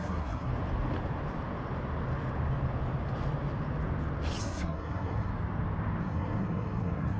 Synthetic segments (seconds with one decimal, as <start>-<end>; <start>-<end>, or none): 0.0-0.5; 4.4-5.3; 6.0-7.2